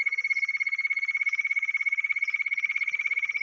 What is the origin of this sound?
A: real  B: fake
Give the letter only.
B